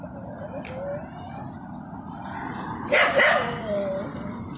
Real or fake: real